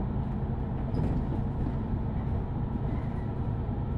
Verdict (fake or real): real